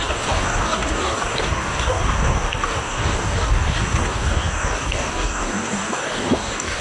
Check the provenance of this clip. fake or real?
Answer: fake